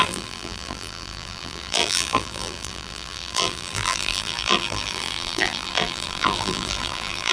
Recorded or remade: remade